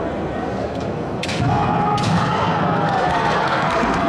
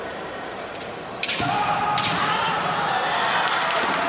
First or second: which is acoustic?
second